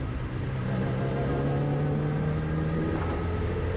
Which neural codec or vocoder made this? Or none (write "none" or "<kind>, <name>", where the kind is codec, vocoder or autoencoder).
none